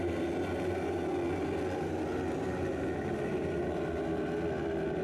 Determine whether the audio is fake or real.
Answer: real